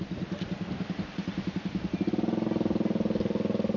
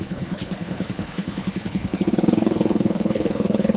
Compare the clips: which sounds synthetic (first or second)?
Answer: second